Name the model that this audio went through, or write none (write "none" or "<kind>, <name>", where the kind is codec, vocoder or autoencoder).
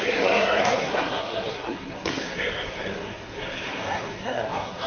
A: codec, SNAC